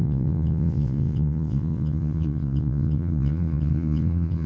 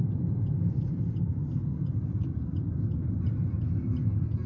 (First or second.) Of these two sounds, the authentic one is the second